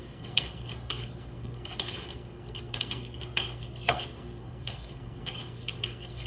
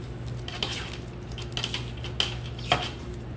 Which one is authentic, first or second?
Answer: second